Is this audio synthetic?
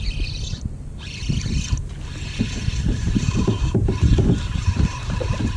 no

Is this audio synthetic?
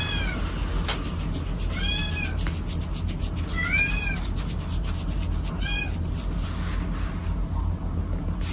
no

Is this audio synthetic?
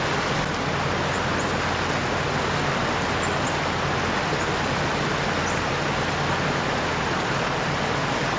no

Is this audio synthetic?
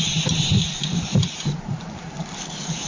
yes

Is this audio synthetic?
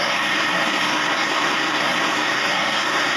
yes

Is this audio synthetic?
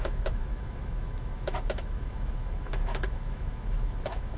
yes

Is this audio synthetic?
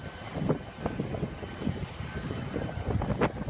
no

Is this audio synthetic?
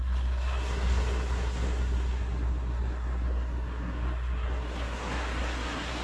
yes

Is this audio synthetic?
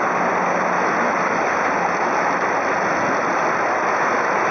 no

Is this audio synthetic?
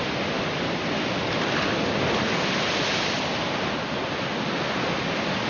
no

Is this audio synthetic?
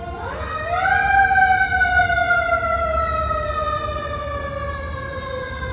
no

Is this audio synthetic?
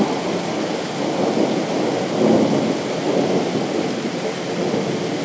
no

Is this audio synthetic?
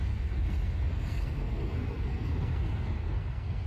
yes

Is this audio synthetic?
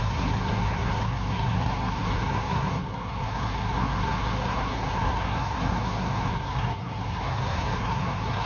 yes